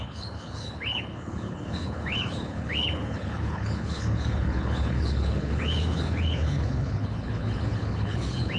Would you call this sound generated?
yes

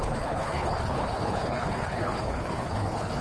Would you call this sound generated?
yes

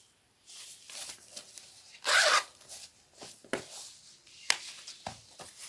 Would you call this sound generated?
no